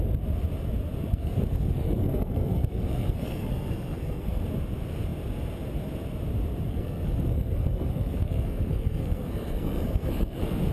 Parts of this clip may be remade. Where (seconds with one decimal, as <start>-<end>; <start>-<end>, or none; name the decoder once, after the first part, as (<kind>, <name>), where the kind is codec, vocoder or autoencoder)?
1.1-4.4 (codec, SNAC); 6.7-10.7